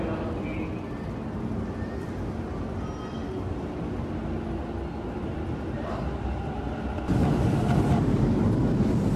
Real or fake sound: real